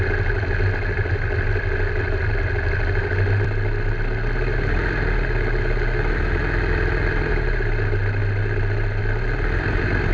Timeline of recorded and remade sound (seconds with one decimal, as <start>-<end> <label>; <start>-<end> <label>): 0.0-10.1 recorded